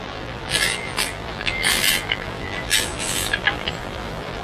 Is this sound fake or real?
fake